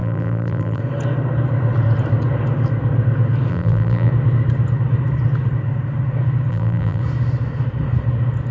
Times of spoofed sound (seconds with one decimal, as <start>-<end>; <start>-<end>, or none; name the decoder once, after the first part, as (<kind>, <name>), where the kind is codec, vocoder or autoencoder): 0.0-0.8 (vocoder, BigVGAN v2); 3.5-4.1; 6.5-7.0